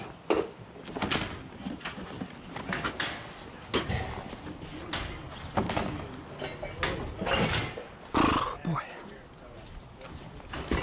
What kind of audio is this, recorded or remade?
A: recorded